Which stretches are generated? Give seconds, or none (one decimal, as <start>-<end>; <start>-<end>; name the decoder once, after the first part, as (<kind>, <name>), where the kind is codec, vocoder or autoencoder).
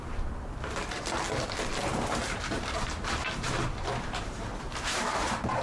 2.2-5.6 (vocoder, BigVGAN v2)